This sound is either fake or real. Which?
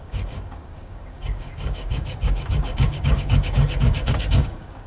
fake